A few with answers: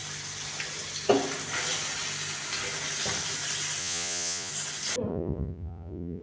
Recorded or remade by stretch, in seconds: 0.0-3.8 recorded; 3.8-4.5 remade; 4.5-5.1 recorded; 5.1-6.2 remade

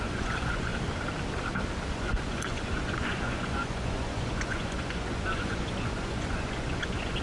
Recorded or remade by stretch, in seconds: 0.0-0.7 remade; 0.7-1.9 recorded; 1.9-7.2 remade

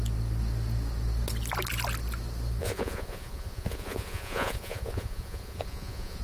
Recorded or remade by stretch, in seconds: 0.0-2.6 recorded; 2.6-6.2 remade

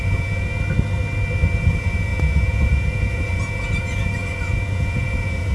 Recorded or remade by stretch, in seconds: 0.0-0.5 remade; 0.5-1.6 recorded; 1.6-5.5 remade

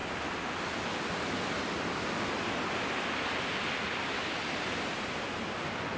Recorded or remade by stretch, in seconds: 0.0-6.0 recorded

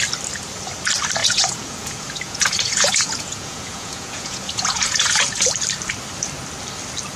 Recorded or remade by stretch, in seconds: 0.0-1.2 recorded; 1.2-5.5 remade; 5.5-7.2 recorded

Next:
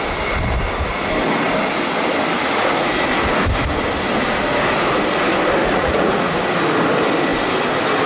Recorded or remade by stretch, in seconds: 0.0-2.4 recorded; 2.4-2.9 remade; 2.9-5.6 recorded; 5.6-6.3 remade; 6.3-8.1 recorded